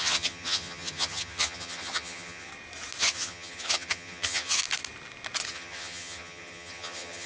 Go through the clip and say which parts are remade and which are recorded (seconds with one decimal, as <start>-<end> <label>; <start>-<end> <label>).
0.0-2.5 remade; 2.5-3.0 recorded; 3.0-4.6 remade; 4.6-5.5 recorded; 5.5-7.3 remade